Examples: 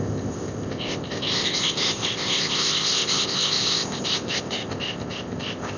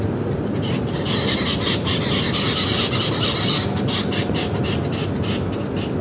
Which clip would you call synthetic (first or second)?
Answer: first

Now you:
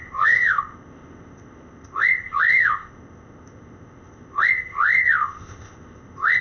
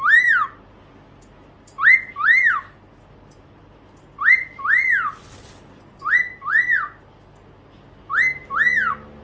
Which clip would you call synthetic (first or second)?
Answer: first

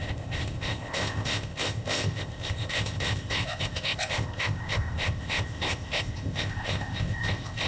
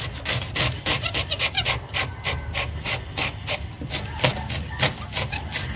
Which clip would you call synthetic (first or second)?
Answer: first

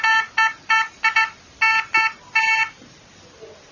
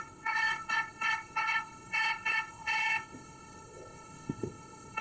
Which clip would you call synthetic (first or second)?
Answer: second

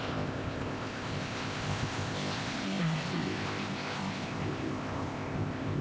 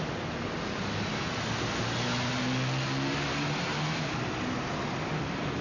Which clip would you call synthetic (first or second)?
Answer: first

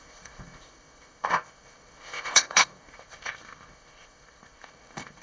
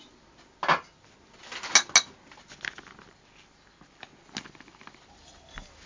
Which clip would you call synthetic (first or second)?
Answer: first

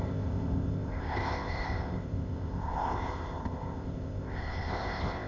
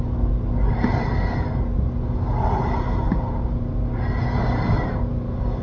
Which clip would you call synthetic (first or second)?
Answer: first